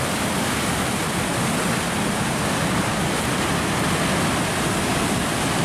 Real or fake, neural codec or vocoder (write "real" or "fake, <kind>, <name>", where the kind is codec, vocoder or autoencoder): real